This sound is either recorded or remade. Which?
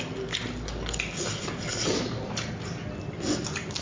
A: recorded